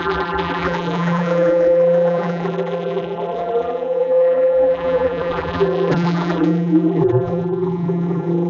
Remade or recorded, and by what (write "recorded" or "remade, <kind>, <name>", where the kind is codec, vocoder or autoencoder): remade, vocoder, BigVGAN v2